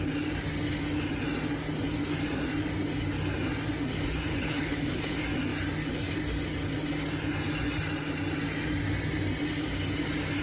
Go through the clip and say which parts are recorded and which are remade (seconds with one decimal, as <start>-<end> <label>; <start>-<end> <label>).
0.0-4.3 recorded; 4.3-5.0 remade; 5.0-10.4 recorded